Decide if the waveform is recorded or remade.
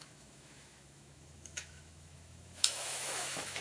remade